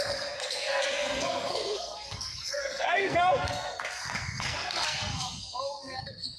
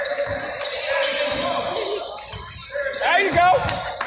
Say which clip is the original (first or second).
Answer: second